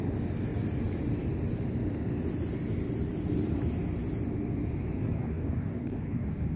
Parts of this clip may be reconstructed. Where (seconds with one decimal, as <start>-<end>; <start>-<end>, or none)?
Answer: 5.0-6.6